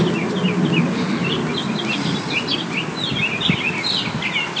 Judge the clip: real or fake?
real